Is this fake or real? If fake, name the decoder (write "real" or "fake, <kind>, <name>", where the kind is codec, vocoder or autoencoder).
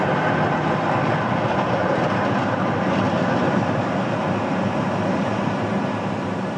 fake, vocoder, BigVGAN v2